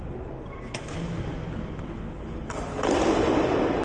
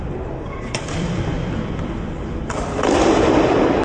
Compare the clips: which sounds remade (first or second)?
second